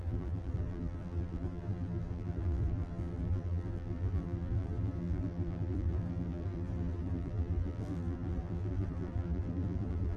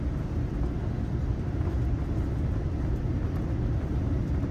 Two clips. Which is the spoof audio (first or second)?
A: first